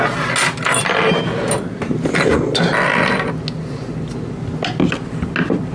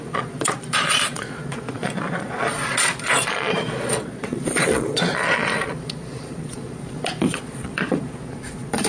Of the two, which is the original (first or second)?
first